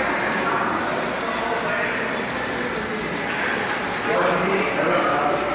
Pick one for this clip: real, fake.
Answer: real